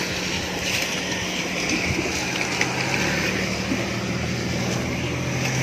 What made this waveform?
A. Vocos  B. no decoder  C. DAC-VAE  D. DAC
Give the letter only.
B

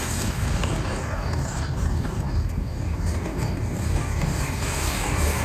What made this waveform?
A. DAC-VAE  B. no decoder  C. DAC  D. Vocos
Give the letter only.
C